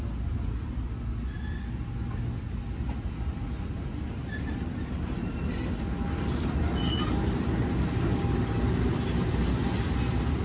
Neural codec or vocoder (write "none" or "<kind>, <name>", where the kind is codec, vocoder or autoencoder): none